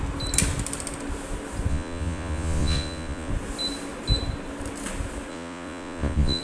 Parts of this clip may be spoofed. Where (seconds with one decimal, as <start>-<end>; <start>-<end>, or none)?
1.7-3.3; 5.3-6.4